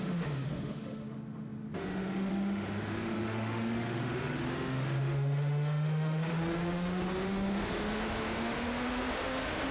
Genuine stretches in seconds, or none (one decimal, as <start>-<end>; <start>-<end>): none